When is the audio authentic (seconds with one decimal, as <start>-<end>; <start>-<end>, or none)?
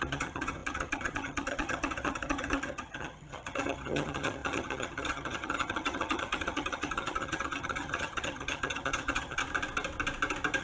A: 9.4-10.6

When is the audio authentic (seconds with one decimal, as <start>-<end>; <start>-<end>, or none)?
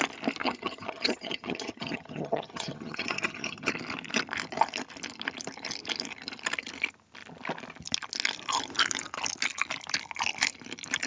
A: 0.0-0.4; 3.7-11.1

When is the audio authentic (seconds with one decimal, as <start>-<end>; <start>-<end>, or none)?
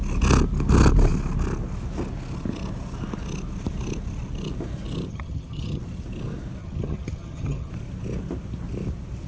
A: 0.0-5.1; 5.8-6.6; 7.7-9.3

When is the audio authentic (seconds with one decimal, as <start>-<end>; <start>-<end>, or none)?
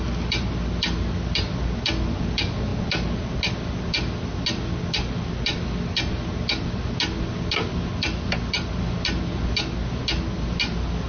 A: 0.0-11.1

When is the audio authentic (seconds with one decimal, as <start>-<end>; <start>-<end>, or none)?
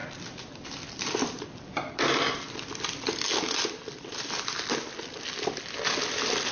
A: 0.0-6.5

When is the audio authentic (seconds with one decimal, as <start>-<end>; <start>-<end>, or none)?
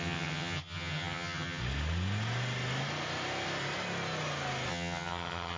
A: 1.6-4.7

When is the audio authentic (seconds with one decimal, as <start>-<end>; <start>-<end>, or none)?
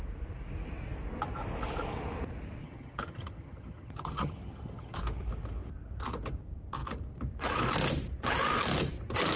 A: 0.0-2.6; 5.0-9.4